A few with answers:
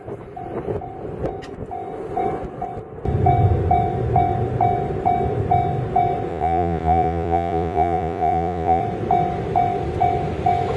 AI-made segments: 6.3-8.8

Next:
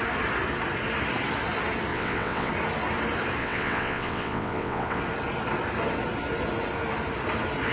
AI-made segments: 1.9-2.5; 3.4-5.0

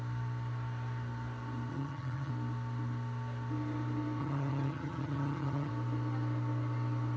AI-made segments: 1.7-2.3; 4.2-5.7